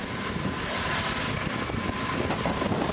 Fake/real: real